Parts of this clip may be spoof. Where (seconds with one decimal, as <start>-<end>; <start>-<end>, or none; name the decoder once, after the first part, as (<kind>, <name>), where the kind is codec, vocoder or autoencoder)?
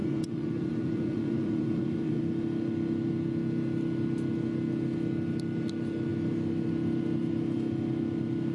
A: 0.0-2.2 (vocoder, Vocos)